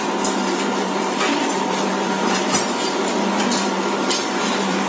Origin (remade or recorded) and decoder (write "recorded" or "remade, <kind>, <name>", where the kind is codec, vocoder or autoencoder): remade, vocoder, BigVGAN v2